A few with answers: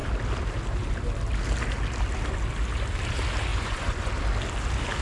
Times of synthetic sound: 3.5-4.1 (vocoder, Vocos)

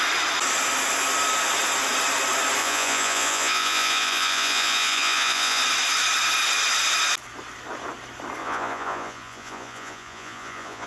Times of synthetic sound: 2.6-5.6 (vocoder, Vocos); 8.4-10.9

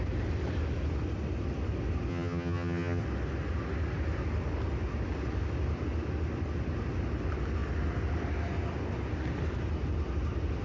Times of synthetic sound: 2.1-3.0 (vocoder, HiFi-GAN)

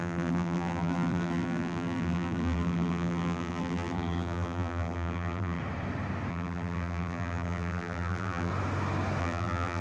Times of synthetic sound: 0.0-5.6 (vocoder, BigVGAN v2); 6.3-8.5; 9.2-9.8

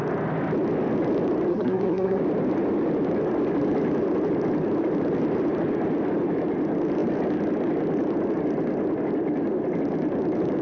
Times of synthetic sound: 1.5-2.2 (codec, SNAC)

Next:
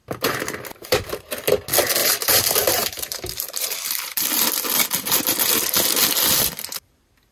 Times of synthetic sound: 0.0-1.3 (vocoder, BigVGAN v2); 2.0-4.3

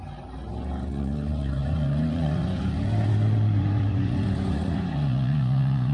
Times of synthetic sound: 0.9-5.9 (vocoder, Vocos)